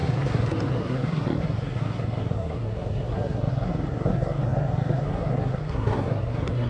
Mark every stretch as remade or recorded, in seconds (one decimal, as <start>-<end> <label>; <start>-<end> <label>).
0.0-6.7 remade